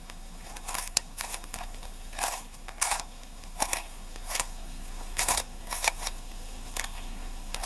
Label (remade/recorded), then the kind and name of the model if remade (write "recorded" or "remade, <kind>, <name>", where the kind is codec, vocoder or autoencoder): remade, codec, SNAC